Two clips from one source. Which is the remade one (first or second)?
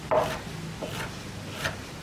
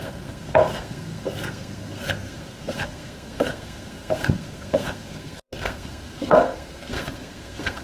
second